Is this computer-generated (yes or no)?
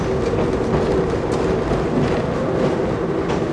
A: no